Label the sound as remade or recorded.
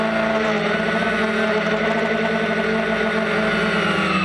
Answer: recorded